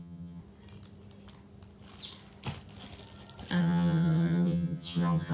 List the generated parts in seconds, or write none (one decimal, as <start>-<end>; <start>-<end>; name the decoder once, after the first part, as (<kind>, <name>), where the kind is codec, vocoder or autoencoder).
0.0-0.4 (vocoder, HiFi-GAN); 3.6-5.3